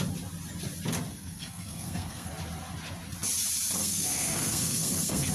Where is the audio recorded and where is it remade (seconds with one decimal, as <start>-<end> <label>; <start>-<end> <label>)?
0.0-1.1 recorded; 1.1-2.3 remade; 2.3-3.8 recorded; 3.8-5.3 remade